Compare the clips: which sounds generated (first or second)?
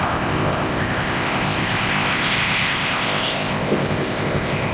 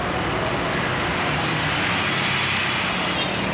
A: first